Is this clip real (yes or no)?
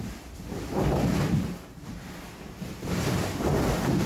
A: yes